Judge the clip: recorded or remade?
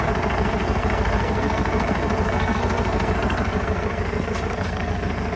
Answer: remade